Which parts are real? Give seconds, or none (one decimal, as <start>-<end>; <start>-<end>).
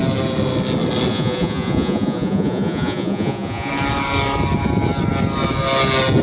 0.0-1.1; 3.7-6.2